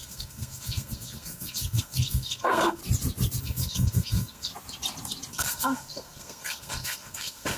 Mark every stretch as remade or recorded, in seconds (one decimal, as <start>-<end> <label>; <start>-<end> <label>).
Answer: 0.0-2.8 remade; 2.8-3.4 recorded; 3.4-4.5 remade; 4.5-5.3 recorded; 5.3-7.6 remade